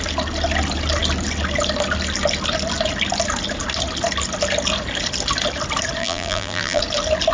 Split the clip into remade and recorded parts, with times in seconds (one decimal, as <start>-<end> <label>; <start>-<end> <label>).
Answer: 0.0-6.0 recorded; 6.0-6.8 remade; 6.8-7.3 recorded